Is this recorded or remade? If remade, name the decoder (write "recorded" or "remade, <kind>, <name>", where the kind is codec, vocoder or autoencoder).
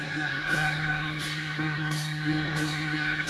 remade, codec, SNAC